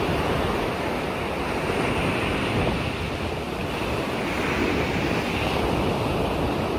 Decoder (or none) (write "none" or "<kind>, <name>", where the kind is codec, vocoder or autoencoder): none